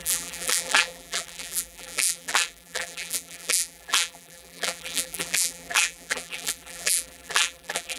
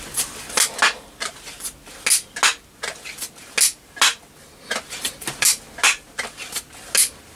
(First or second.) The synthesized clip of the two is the first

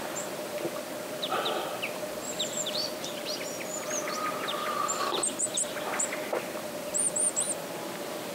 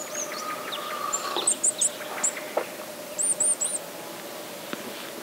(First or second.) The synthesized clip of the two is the first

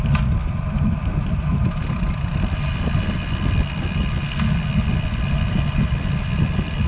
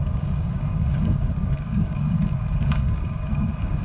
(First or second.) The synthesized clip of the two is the second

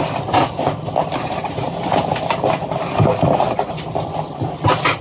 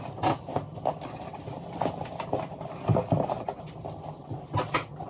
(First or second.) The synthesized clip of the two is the first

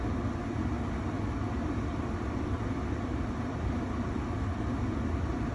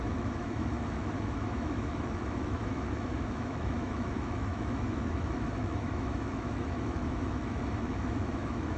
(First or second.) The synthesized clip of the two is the second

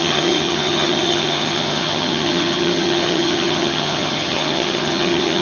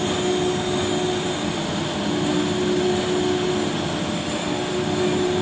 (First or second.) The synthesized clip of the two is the first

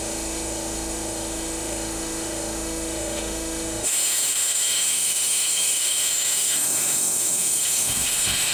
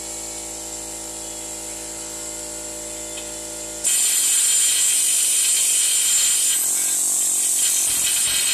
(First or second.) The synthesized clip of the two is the first